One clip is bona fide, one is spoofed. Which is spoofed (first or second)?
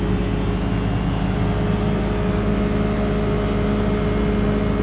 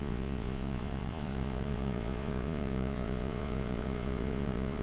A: second